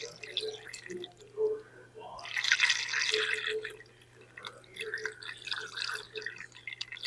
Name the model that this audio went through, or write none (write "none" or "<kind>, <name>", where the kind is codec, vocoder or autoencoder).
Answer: none